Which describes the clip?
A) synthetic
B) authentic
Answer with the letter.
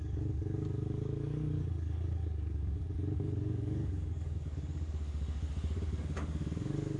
A